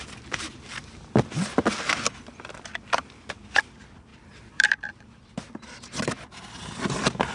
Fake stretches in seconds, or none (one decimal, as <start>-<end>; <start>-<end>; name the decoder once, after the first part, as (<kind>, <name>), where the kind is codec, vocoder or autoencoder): 4.1-5.7 (vocoder, BigVGAN v2)